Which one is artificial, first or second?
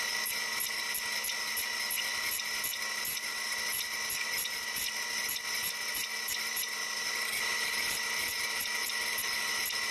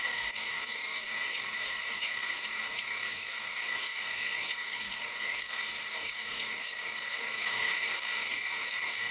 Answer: second